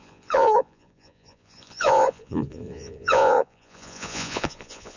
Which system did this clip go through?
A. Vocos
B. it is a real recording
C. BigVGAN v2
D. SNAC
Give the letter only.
A